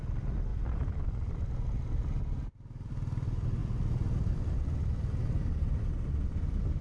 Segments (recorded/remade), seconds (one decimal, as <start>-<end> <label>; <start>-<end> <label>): 0.0-6.8 recorded